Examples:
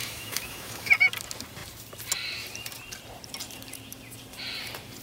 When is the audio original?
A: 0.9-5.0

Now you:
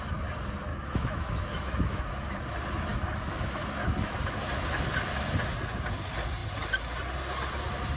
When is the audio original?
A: 0.0-0.7; 2.4-2.9; 4.1-8.0

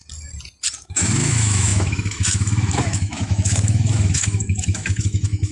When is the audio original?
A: 0.0-0.8

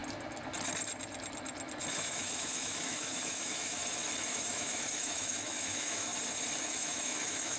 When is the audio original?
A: 0.0-1.9; 3.8-4.3; 6.1-6.6

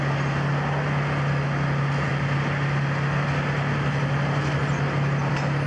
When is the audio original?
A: 0.0-5.7